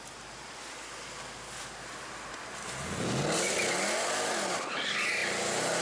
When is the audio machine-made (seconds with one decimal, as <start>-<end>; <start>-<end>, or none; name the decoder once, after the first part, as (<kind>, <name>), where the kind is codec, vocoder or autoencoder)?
5.2-5.8 (vocoder, BigVGAN v2)